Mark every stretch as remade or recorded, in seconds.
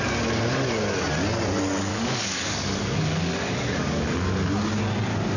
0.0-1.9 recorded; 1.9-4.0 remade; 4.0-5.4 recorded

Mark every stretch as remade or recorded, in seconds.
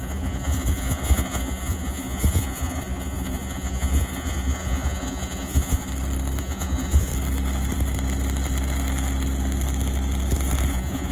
0.0-5.9 remade; 5.9-6.4 recorded; 6.4-7.1 remade; 7.1-10.7 recorded; 10.7-11.1 remade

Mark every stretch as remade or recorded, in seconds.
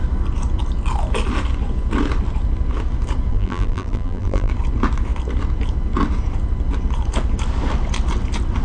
0.0-3.3 recorded; 3.3-4.5 remade; 4.5-8.6 recorded